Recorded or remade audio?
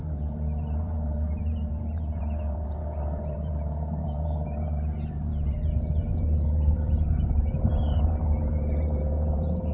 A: remade